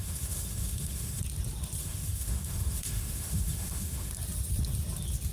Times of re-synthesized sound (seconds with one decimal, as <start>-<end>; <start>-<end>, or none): 0.0-1.2; 1.8-4.1